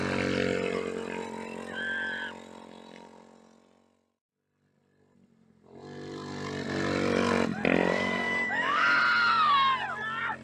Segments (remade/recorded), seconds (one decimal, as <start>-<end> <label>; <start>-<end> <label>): 0.0-7.9 recorded; 7.9-9.0 remade; 9.0-10.4 recorded